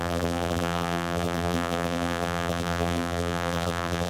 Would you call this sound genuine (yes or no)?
no